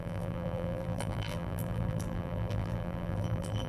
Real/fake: fake